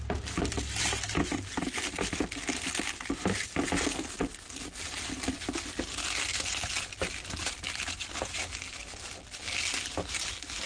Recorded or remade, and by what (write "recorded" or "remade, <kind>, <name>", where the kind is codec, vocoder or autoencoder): recorded